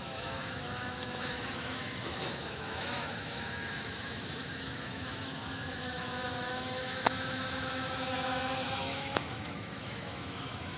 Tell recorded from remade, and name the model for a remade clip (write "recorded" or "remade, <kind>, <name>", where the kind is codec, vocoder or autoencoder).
remade, autoencoder, DAC-VAE